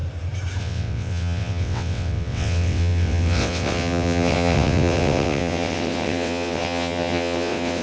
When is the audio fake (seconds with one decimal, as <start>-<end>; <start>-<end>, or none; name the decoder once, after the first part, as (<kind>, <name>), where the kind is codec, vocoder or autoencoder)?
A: 0.6-7.8 (vocoder, WaveNeXt)